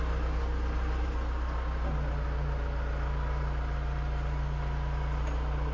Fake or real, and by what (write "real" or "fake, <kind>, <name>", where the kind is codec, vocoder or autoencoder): real